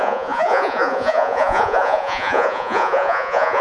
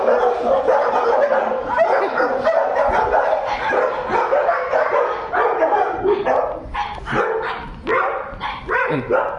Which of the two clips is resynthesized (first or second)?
first